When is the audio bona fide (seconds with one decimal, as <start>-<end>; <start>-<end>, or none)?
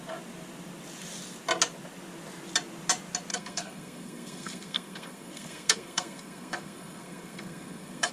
0.0-3.3